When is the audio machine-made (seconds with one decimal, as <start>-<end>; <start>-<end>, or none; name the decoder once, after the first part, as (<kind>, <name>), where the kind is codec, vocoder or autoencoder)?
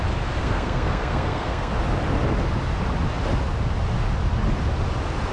0.4-1.7 (codec, SNAC)